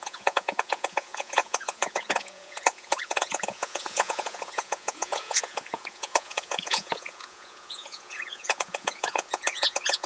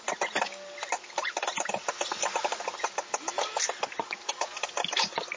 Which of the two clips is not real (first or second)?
first